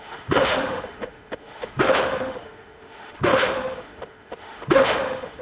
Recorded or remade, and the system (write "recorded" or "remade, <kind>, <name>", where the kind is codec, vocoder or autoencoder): remade, autoencoder, DAC-VAE